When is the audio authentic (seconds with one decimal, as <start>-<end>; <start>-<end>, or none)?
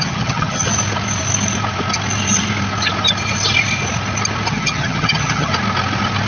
0.7-4.5; 5.5-6.3